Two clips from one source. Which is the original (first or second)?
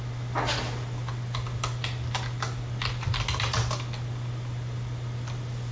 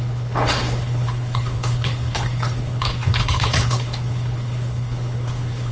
first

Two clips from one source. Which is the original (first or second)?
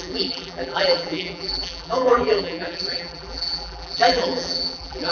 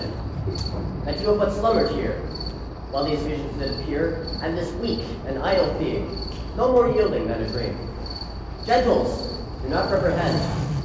second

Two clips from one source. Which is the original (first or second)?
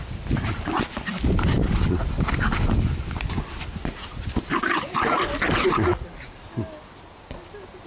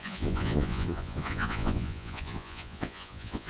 first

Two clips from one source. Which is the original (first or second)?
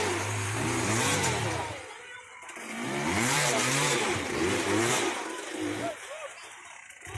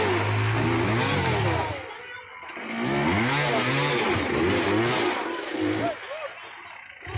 second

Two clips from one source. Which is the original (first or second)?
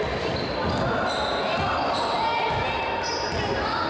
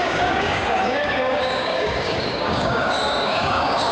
first